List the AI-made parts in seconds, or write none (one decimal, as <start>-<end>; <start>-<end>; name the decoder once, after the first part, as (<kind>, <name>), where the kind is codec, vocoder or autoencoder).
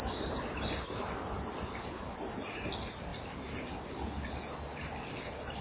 none